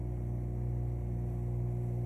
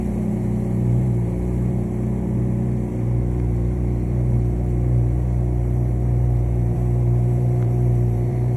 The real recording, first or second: first